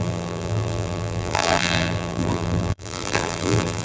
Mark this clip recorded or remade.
remade